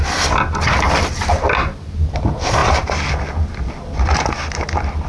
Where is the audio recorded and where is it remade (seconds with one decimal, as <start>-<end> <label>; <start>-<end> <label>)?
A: 0.0-5.1 recorded